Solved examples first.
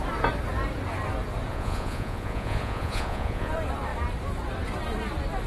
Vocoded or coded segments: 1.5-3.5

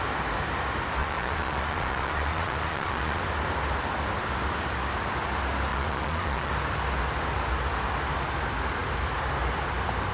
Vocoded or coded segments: 1.0-3.2; 5.7-6.5

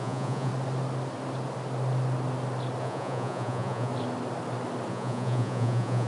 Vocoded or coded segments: 0.0-0.5; 2.8-3.9; 4.9-6.1

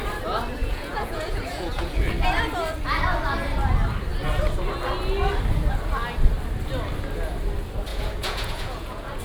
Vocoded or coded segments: 0.6-2.1; 7.9-9.2

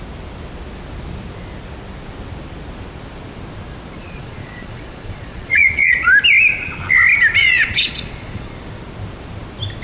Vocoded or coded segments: 4.0-6.1; 7.4-8.5

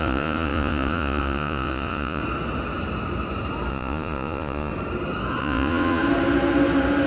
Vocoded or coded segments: 0.0-2.2; 3.7-4.7; 5.4-6.0